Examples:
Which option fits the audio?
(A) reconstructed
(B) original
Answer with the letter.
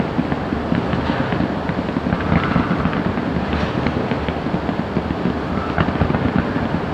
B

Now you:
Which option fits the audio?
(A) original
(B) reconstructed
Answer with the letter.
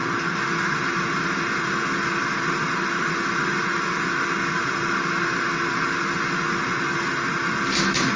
A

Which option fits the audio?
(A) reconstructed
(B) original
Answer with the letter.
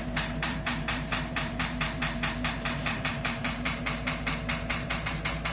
A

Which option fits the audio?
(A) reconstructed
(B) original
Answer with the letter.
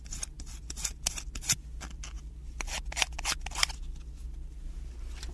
B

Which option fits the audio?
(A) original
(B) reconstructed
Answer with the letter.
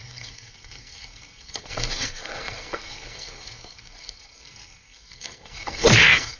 B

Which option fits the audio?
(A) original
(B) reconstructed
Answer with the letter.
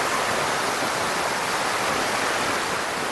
A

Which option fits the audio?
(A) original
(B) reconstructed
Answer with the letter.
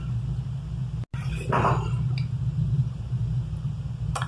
A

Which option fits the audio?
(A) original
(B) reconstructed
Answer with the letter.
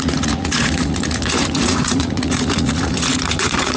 B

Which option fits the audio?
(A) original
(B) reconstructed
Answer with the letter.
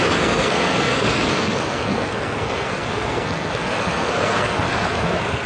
B